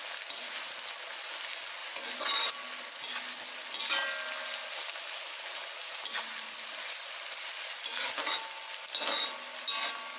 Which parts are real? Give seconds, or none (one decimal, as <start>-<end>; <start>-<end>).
0.0-10.2